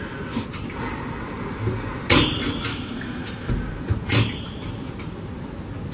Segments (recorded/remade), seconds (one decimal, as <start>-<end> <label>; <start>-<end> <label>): 0.0-2.7 recorded; 2.7-3.5 remade; 3.5-5.9 recorded